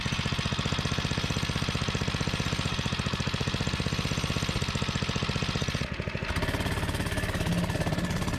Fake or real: real